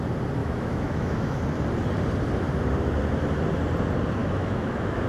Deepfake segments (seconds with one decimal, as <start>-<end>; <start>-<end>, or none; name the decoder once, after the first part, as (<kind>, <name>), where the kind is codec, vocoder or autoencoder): 0.4-1.4 (autoencoder, DAC-VAE); 4.2-5.1